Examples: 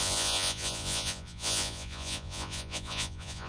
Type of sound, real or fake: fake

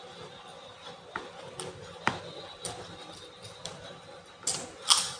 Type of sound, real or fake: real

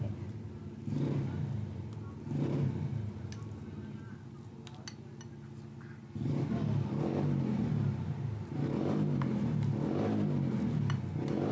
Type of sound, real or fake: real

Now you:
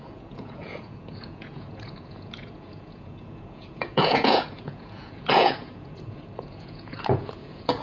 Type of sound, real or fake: fake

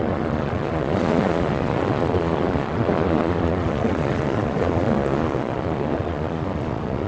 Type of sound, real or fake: fake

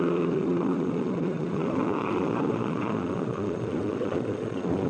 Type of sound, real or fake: fake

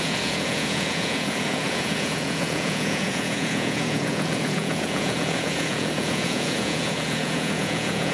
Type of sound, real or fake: fake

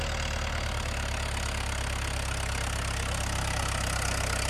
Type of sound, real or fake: real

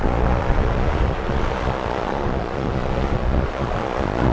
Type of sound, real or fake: fake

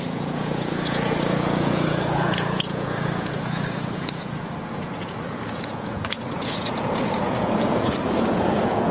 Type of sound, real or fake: fake